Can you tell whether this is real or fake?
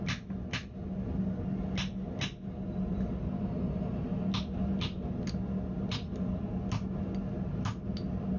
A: real